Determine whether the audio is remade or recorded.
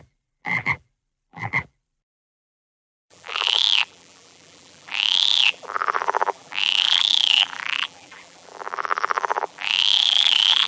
remade